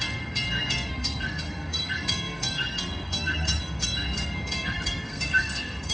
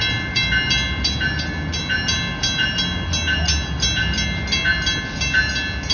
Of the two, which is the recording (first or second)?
second